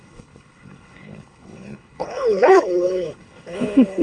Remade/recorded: remade